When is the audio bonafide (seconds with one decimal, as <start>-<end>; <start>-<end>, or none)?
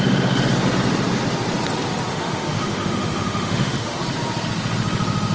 0.0-2.1; 4.0-5.3